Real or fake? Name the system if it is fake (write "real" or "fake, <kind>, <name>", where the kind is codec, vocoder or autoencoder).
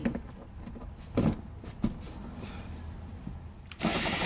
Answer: real